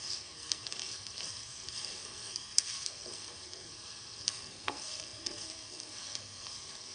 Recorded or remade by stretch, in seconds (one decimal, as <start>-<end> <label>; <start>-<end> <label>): 0.0-6.9 remade